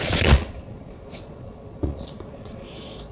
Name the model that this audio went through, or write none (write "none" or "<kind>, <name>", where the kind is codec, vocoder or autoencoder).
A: vocoder, Vocos